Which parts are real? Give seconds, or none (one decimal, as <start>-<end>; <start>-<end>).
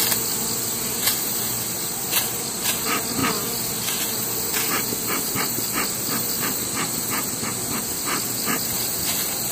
0.0-9.5